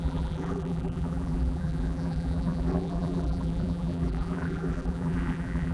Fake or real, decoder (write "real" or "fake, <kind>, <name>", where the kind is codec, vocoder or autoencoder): fake, vocoder, BigVGAN v2